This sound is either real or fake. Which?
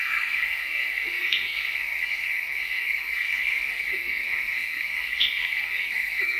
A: fake